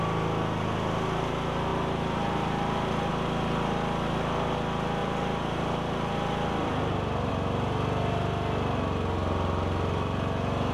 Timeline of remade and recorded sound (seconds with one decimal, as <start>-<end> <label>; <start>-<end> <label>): 0.0-1.7 recorded; 1.7-3.1 remade; 3.1-5.0 recorded; 5.0-7.3 remade; 7.3-10.7 recorded